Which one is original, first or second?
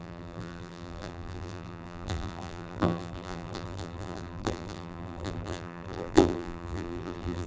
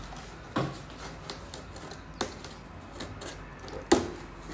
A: second